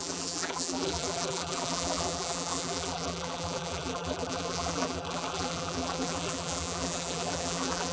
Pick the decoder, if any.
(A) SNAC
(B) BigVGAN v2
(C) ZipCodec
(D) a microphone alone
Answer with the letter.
B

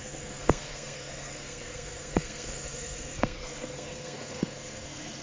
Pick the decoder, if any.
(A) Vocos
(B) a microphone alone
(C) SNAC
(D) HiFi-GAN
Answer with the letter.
C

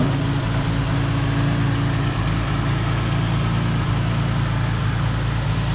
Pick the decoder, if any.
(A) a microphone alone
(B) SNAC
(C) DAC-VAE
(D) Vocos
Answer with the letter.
A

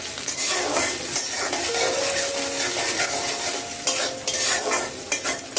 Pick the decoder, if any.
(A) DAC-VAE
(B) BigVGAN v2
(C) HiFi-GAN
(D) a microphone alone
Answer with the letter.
D